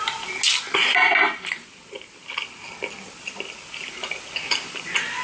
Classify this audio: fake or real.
real